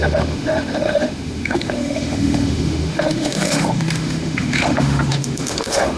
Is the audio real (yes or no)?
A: no